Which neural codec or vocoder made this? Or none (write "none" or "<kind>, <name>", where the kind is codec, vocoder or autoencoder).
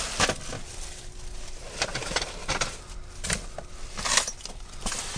none